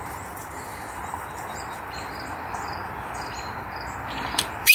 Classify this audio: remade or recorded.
remade